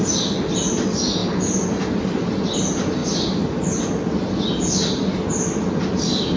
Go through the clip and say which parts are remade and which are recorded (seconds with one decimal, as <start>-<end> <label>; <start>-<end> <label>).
0.0-6.4 recorded